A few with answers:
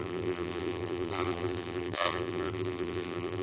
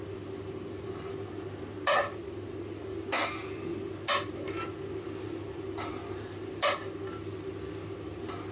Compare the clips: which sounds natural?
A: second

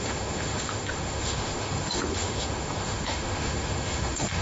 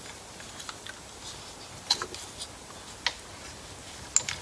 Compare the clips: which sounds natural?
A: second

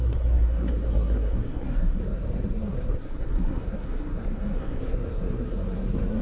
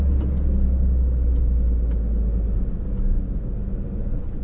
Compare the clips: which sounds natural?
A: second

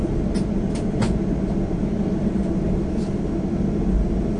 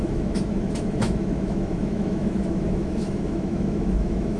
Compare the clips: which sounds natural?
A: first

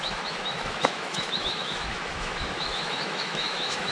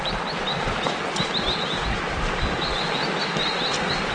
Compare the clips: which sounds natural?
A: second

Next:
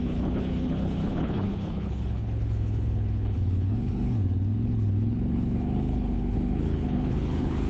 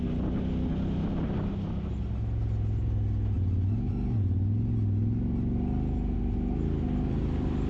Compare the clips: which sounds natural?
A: second